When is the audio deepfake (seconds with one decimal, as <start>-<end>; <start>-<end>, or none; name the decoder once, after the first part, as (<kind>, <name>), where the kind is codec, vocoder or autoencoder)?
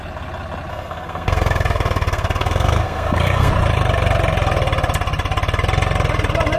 0.7-3.5 (codec, SNAC)